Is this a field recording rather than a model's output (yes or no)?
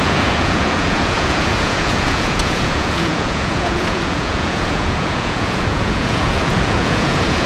no